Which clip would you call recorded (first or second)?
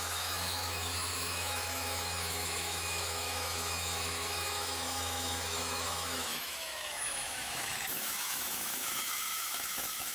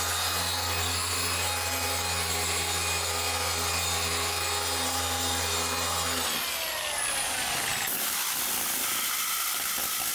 second